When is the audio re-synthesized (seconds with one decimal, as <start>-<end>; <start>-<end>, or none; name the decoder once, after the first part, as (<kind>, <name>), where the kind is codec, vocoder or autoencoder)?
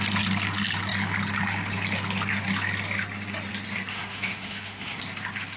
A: 3.9-5.0 (autoencoder, DAC-VAE)